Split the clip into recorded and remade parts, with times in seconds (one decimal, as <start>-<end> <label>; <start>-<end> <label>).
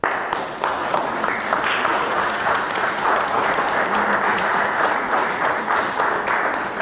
0.0-0.8 recorded; 0.8-1.3 remade; 1.3-1.9 recorded; 1.9-3.6 remade; 3.6-4.3 recorded; 4.3-5.4 remade; 5.4-6.8 recorded